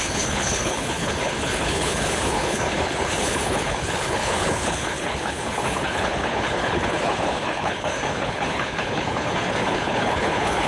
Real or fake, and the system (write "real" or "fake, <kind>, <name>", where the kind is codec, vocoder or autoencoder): fake, codec, HILCodec